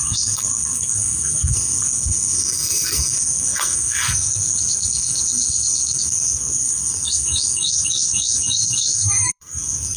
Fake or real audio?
fake